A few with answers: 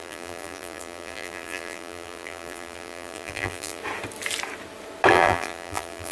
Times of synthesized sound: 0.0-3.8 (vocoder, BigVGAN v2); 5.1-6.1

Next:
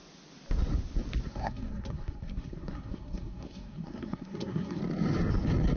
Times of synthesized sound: 1.3-4.8 (codec, SNAC)

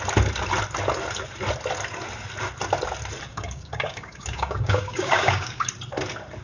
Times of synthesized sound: 3.3-5.7 (codec, DAC)